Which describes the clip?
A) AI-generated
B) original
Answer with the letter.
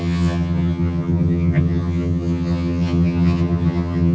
A